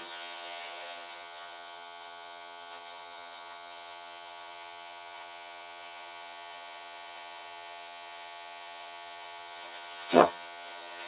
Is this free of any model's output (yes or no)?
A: no